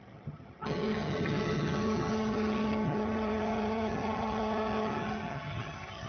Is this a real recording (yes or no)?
no